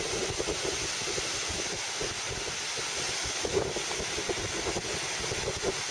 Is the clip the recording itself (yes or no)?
yes